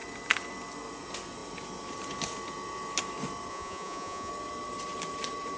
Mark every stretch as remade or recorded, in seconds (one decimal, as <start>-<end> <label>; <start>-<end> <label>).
0.0-3.5 recorded; 3.5-4.3 remade; 4.3-5.6 recorded